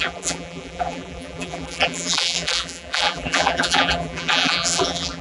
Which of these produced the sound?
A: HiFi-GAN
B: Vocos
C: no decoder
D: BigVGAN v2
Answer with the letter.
D